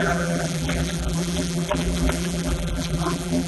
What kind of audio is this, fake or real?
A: fake